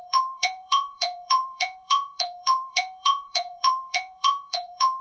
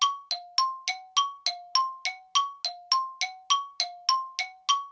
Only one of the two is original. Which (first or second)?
second